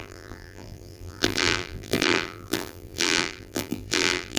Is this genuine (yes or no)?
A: no